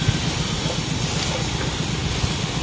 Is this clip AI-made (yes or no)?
no